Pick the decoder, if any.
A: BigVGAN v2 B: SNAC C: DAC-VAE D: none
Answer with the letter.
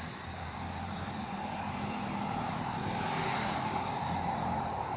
A